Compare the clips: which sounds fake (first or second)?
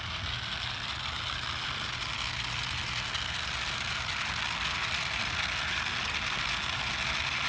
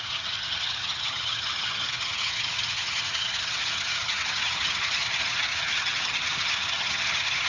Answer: second